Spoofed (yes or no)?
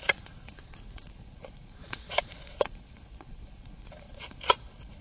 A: yes